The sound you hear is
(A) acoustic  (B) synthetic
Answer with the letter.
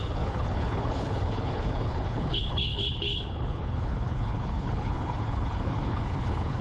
B